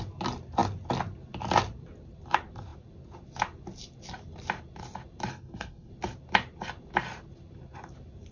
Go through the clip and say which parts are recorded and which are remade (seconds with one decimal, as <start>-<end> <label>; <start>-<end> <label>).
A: 0.0-5.3 recorded; 5.3-5.9 remade; 5.9-8.3 recorded